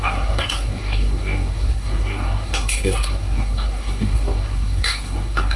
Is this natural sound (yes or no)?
no